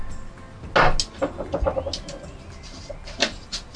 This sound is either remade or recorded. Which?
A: recorded